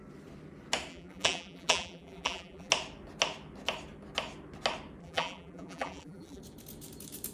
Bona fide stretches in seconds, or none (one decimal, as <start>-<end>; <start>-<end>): 0.0-0.9; 2.7-5.0; 6.4-7.3